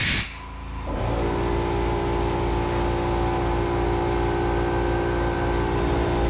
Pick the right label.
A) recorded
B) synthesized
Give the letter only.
A